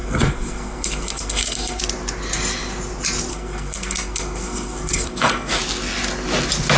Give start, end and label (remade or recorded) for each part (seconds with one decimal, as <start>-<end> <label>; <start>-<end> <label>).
0.0-1.8 remade; 1.8-3.3 recorded; 3.3-5.6 remade; 5.6-6.8 recorded